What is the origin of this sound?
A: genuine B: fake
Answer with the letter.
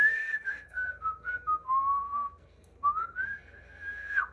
B